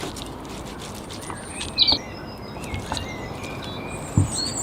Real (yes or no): yes